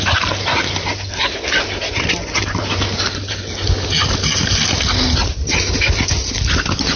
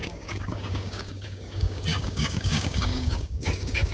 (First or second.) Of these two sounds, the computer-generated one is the second